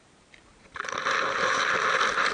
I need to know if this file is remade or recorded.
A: remade